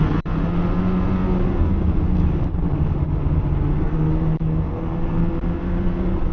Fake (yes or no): no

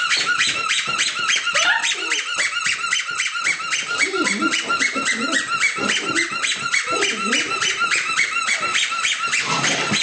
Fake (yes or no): no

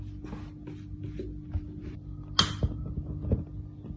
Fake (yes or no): no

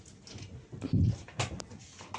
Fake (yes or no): no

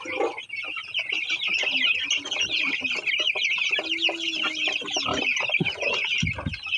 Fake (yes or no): no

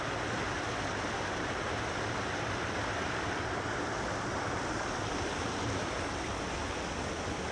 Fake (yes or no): no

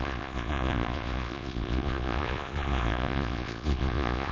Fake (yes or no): yes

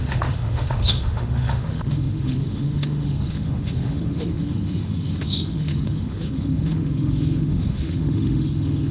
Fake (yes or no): yes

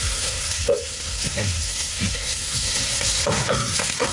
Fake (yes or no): yes